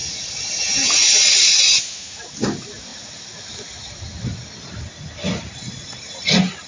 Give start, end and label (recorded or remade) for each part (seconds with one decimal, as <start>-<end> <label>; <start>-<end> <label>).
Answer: 0.0-6.7 recorded